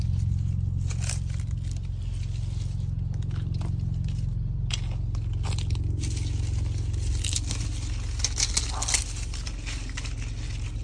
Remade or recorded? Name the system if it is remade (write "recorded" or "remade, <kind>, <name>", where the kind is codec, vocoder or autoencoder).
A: recorded